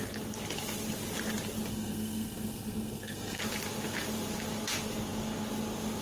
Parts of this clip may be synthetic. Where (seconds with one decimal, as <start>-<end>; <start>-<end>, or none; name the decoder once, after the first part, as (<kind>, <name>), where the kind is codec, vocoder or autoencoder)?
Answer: 1.7-3.4 (codec, SNAC)